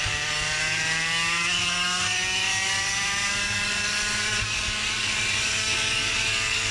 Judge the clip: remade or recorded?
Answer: remade